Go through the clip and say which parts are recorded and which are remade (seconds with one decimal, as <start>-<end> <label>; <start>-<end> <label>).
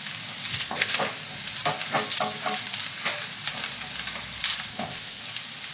0.0-0.5 recorded; 0.5-1.0 remade; 1.0-4.7 recorded; 4.7-5.2 remade; 5.2-5.7 recorded